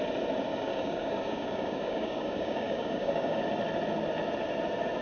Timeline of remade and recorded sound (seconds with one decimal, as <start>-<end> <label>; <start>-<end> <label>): 0.0-0.5 recorded; 0.5-3.5 remade; 3.5-5.0 recorded